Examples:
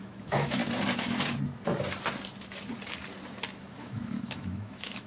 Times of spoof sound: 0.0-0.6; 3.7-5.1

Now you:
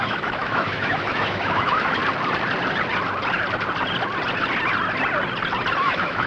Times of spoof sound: 0.0-2.0; 5.8-6.3